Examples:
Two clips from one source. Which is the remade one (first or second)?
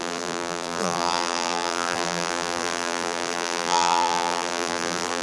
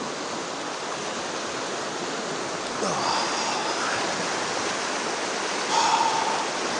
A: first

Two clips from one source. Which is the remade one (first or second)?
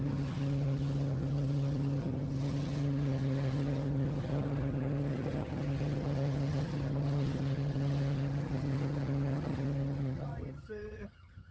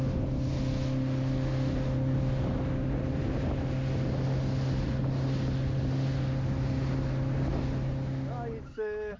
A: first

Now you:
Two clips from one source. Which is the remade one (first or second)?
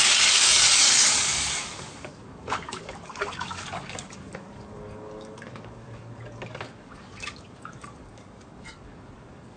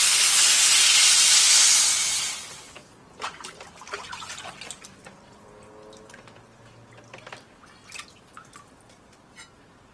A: first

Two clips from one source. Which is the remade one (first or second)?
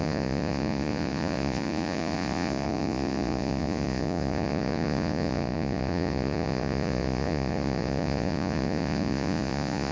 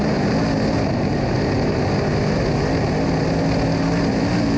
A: first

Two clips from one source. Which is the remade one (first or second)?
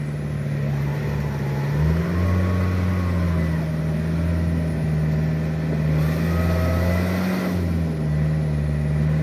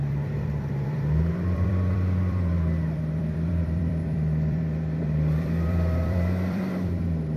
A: second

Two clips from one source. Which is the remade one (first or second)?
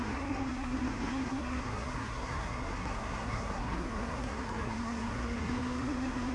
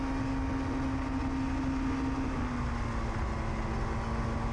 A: first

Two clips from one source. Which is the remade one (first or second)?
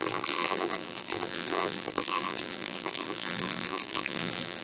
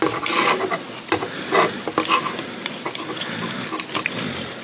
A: first